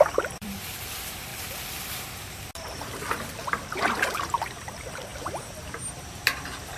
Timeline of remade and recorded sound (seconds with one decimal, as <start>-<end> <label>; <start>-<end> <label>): 0.0-1.3 remade; 1.3-3.5 recorded; 3.5-6.8 remade